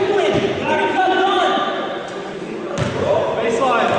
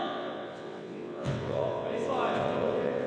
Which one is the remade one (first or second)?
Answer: second